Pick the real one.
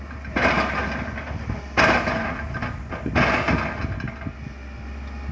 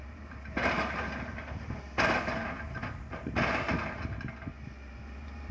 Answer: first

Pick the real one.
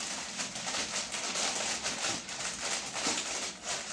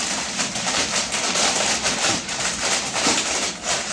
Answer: first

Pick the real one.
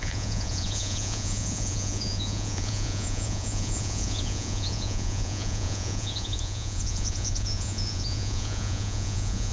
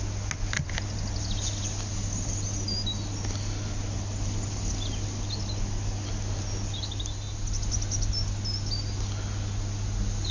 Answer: second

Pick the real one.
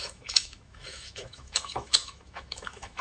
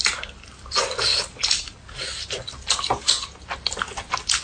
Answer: second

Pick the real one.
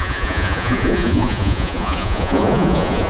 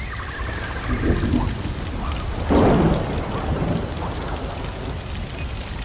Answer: second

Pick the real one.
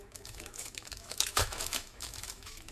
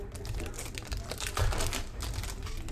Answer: second